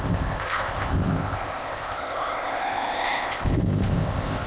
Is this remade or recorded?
remade